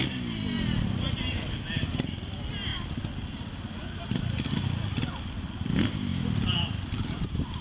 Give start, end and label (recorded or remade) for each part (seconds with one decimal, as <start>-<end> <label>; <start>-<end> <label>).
0.0-7.6 recorded